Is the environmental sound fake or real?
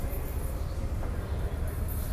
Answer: real